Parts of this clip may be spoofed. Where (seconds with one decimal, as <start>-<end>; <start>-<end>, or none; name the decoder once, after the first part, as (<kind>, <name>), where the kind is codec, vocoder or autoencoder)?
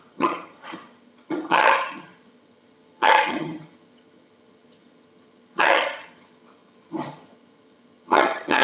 0.0-8.6 (vocoder, HiFi-GAN)